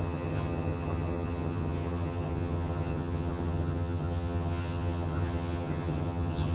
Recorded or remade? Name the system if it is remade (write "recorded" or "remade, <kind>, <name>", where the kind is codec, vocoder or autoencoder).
remade, vocoder, HiFi-GAN